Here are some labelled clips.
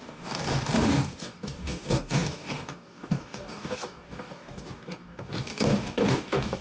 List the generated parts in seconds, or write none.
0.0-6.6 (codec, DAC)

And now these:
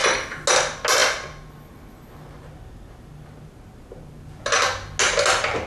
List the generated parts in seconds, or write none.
none